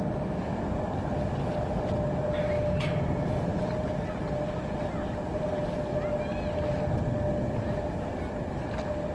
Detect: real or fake real